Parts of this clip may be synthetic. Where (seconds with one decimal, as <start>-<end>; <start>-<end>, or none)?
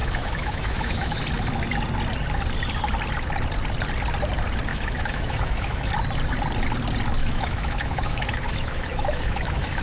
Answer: 0.0-1.2; 4.7-5.9; 7.2-9.8